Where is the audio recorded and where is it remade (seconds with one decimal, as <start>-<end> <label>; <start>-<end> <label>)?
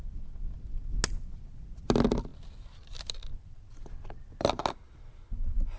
0.0-5.8 recorded